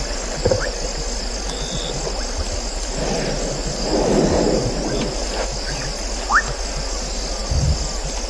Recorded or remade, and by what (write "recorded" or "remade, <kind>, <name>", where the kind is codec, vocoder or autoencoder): recorded